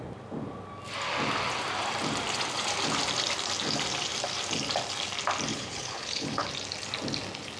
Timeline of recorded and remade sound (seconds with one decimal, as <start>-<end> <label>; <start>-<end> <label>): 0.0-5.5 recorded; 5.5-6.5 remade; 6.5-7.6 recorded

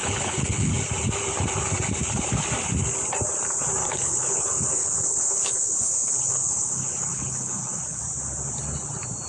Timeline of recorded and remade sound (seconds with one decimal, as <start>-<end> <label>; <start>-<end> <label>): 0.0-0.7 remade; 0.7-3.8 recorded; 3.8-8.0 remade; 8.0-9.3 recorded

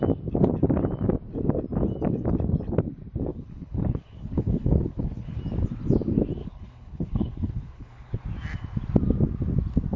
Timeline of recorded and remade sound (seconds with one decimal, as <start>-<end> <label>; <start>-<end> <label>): 0.0-3.3 recorded; 3.3-5.4 remade; 5.4-6.4 recorded; 6.4-8.2 remade; 8.2-10.0 recorded

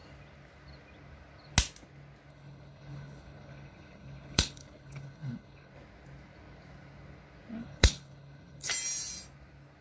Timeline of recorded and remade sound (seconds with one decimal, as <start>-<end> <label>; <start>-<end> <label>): 0.0-2.3 recorded; 2.3-5.7 remade; 5.7-7.6 recorded; 7.6-8.7 remade; 8.7-9.8 recorded

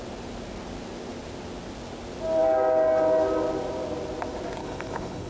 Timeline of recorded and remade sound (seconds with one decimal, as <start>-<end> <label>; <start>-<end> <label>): 0.0-4.6 recorded; 4.6-5.3 remade

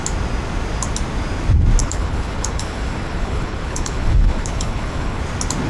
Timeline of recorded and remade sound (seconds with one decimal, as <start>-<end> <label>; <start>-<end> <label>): 0.0-1.8 recorded; 1.8-5.2 remade; 5.2-5.7 recorded